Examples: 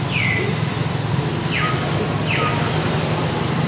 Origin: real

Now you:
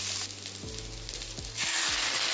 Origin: real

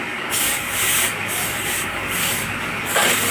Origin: fake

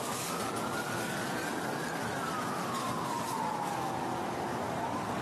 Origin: fake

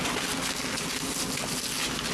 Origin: real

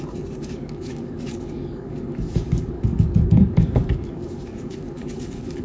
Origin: fake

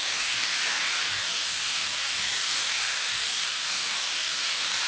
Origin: fake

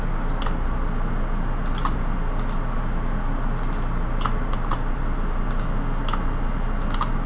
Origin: real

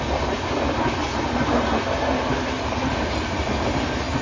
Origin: real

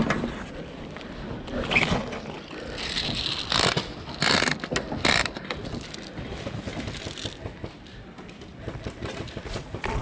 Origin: real